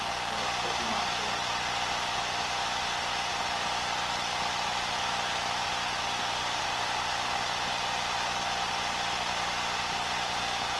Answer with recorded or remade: recorded